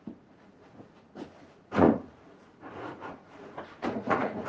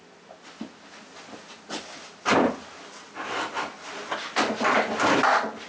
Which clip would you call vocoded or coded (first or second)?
first